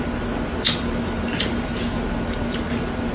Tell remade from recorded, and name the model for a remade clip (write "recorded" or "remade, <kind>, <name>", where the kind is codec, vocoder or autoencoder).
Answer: recorded